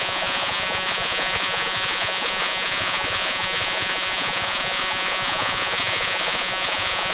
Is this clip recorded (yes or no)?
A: no